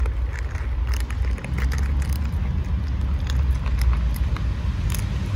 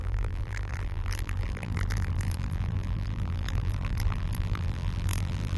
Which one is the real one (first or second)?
first